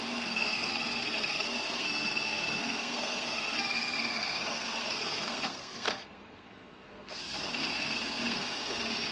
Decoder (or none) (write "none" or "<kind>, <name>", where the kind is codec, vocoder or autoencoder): codec, SNAC